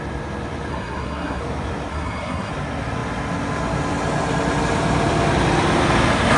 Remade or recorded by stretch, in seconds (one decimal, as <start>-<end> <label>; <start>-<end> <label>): 0.0-0.7 recorded; 0.7-1.4 remade; 1.4-1.9 recorded; 1.9-2.5 remade; 2.5-6.4 recorded